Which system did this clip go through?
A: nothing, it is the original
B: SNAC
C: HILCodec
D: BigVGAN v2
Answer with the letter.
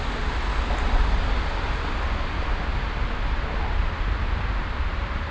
A